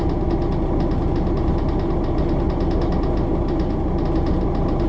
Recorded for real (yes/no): yes